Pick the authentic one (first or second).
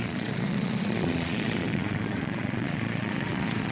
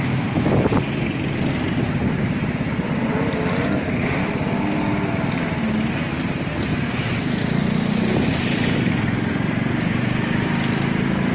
second